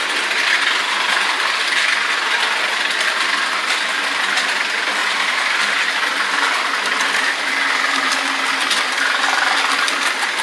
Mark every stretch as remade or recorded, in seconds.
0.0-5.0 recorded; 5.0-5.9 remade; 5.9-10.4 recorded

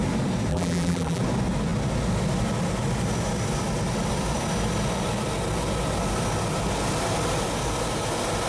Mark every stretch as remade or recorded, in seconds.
0.0-0.5 recorded; 0.5-1.2 remade; 1.2-8.5 recorded

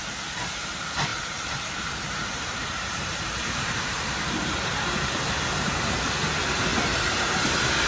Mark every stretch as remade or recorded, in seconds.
0.0-1.1 recorded; 1.1-4.5 remade; 4.5-6.7 recorded; 6.7-7.3 remade; 7.3-7.9 recorded

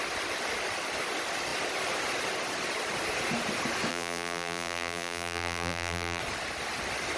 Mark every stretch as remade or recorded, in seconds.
0.0-3.9 recorded; 3.9-6.2 remade; 6.2-7.2 recorded